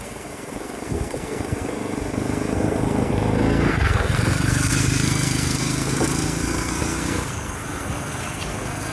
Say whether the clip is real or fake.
fake